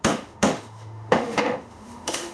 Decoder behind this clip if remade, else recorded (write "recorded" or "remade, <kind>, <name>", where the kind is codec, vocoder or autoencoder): remade, autoencoder, DAC-VAE